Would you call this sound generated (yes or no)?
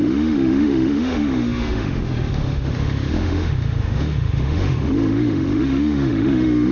yes